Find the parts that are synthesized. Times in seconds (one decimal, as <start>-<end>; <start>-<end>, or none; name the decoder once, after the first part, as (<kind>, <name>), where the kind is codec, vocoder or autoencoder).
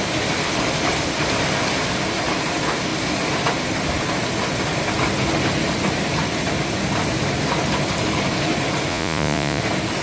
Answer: 8.9-9.6 (vocoder, Vocos)